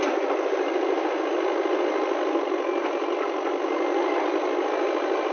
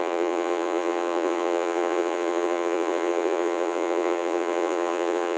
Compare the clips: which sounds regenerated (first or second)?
second